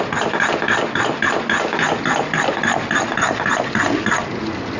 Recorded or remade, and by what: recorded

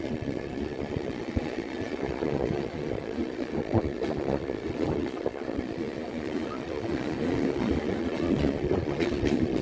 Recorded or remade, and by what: remade, vocoder, Vocos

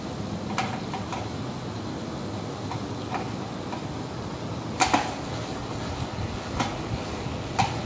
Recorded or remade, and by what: recorded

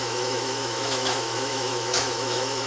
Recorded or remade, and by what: remade, autoencoder, DAC-VAE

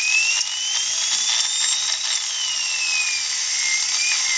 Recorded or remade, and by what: recorded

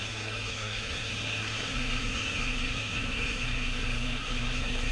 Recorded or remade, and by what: remade, codec, SNAC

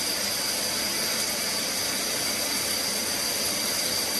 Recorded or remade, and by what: recorded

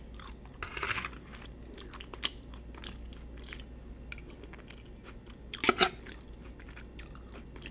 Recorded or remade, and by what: recorded